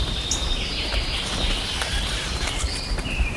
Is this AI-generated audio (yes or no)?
yes